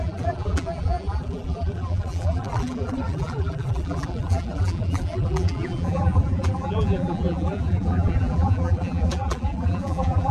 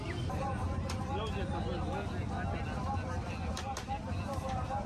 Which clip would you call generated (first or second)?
first